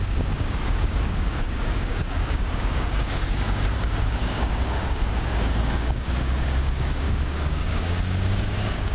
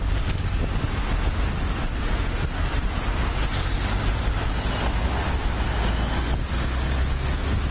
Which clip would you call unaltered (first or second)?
second